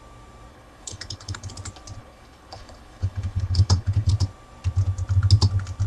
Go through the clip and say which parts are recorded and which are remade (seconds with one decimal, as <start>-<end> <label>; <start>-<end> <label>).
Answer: 0.0-0.5 recorded; 0.5-1.5 remade; 1.5-2.0 recorded; 2.0-4.1 remade; 4.1-5.9 recorded